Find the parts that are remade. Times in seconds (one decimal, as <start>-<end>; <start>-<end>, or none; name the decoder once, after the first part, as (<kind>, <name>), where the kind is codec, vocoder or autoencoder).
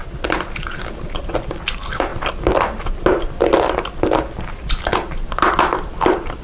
none